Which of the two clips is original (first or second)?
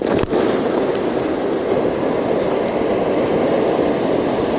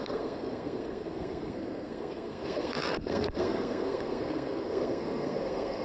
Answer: first